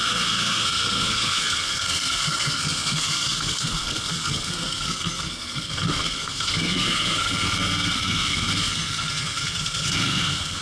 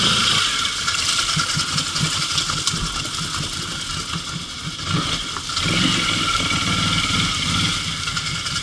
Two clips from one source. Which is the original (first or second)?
second